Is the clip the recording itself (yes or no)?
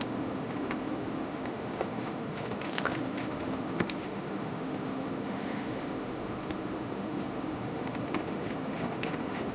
no